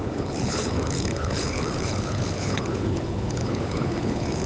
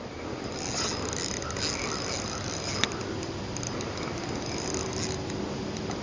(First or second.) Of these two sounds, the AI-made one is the first